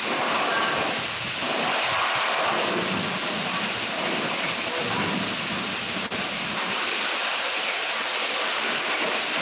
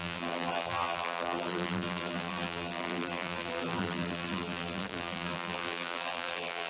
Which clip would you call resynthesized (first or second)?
second